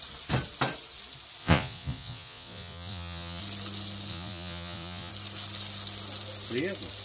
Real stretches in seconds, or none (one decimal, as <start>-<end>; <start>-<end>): 0.0-1.4; 3.4-4.1; 5.1-7.0